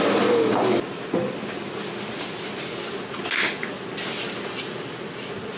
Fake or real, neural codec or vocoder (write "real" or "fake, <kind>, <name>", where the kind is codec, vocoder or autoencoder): real